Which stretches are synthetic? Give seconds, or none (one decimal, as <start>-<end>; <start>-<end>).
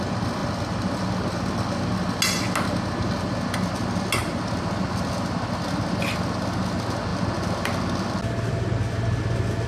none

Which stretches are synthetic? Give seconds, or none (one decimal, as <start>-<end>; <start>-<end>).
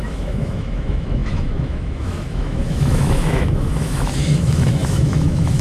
0.0-5.6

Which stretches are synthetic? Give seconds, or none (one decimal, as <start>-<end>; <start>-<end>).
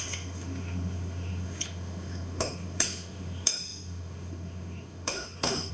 0.0-5.7